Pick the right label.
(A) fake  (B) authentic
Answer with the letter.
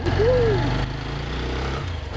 B